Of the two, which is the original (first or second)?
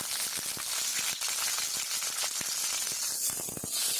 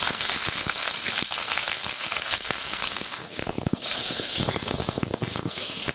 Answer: first